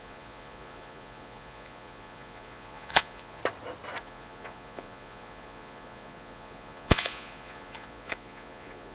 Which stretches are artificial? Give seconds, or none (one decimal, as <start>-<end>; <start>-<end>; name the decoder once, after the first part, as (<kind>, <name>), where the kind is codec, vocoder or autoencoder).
0.0-3.4 (vocoder, Vocos); 4.0-8.9